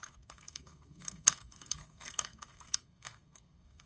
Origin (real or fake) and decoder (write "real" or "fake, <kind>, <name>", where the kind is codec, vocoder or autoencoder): fake, codec, SNAC